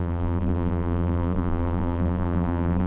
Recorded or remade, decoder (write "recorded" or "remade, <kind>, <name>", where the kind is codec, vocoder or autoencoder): remade, vocoder, BigVGAN v2